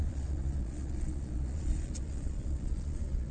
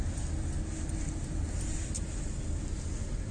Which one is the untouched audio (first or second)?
second